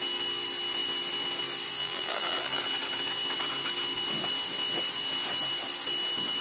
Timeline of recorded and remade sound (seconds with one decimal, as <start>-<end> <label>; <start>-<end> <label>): 0.0-1.8 recorded; 1.8-2.6 remade; 2.6-6.4 recorded